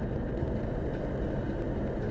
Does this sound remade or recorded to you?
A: recorded